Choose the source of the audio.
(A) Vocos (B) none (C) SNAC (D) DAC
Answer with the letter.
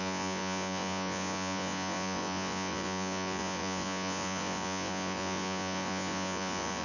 A